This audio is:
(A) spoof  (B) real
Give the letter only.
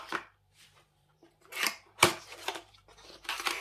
A